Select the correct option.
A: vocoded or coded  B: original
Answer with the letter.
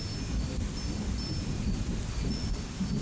B